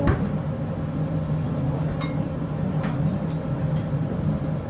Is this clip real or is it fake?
real